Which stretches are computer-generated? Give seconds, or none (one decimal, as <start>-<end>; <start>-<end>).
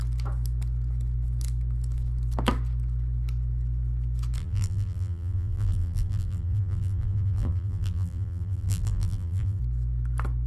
4.4-9.6